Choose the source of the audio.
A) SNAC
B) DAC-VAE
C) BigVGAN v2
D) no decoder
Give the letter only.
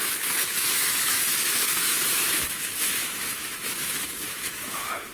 B